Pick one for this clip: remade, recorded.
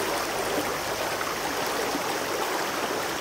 recorded